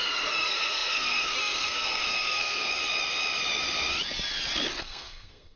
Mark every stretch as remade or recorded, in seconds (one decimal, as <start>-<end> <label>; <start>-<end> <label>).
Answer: 0.0-2.7 remade; 2.7-4.8 recorded; 4.8-5.6 remade